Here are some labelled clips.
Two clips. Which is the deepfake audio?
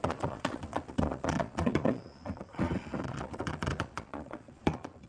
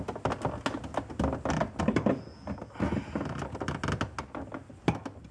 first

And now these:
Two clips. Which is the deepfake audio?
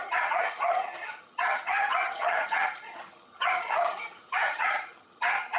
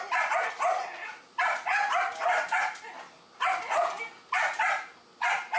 first